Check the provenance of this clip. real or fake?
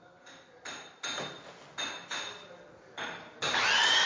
real